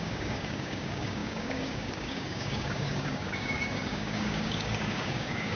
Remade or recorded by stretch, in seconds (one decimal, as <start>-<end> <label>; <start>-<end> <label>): 0.0-5.6 remade

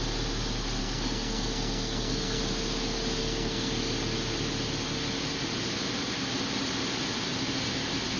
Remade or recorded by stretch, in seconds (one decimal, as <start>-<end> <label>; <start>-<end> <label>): 0.0-0.8 recorded; 0.8-2.4 remade; 2.4-3.2 recorded; 3.2-3.7 remade; 3.7-8.2 recorded

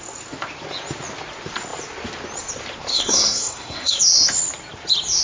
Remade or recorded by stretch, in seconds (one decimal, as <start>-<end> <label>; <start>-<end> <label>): 0.0-2.9 recorded; 2.9-4.0 remade; 4.0-5.2 recorded

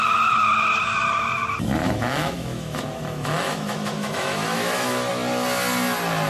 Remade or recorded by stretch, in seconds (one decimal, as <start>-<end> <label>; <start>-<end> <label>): 0.0-1.8 recorded; 1.8-5.1 remade; 5.1-6.3 recorded

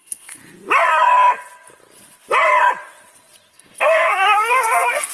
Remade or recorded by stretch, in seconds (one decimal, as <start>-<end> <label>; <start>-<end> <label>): 0.0-0.4 remade; 0.4-3.5 recorded; 3.5-5.1 remade

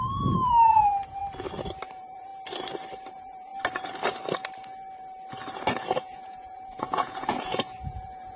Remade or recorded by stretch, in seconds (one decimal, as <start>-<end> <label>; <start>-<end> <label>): 0.0-1.2 remade; 1.2-1.9 recorded; 1.9-2.3 remade; 2.3-3.1 recorded; 3.1-3.5 remade; 3.5-5.8 recorded; 5.8-8.4 remade